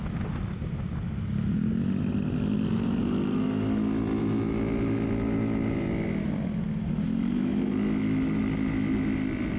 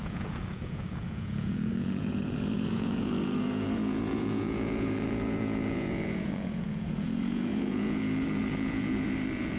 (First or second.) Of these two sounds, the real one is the first